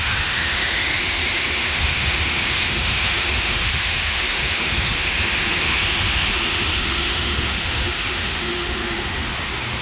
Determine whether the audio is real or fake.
fake